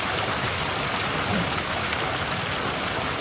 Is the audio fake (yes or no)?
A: no